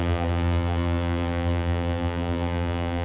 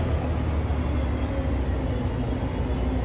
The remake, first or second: first